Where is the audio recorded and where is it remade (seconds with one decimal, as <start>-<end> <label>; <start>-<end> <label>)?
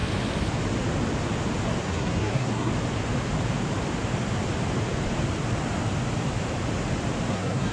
0.0-1.8 recorded; 1.8-2.7 remade; 2.7-7.3 recorded; 7.3-7.7 remade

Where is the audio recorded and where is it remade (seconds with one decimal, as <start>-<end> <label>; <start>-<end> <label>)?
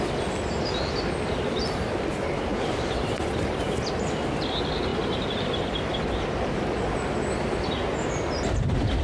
0.0-2.5 recorded; 2.5-3.9 remade; 3.9-4.9 recorded; 4.9-6.1 remade; 6.1-9.0 recorded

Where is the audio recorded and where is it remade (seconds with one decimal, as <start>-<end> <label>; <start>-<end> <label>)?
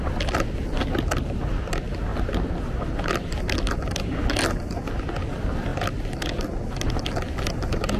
0.0-8.0 recorded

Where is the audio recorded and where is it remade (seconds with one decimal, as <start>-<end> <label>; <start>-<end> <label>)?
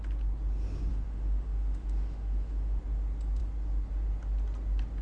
0.0-0.9 recorded; 0.9-2.8 remade; 2.8-5.0 recorded